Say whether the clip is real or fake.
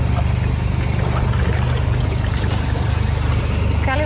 real